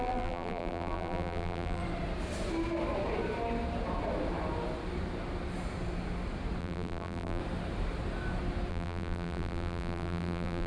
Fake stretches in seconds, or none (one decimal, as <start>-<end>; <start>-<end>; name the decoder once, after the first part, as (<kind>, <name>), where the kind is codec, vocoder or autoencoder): 0.0-1.8 (vocoder, BigVGAN v2); 6.6-7.4; 8.7-10.7